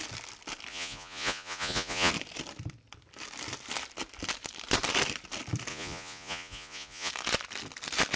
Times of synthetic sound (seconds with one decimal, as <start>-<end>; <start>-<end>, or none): 0.7-2.1; 5.7-7.1